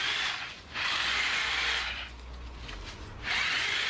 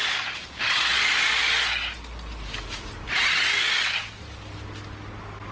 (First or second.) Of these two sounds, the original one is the second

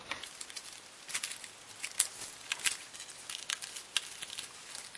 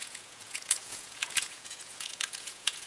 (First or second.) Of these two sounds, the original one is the first